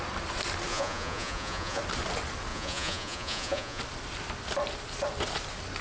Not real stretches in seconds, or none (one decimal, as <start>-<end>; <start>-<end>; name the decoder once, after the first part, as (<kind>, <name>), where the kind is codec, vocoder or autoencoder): 0.7-1.8 (vocoder, Vocos); 2.5-3.8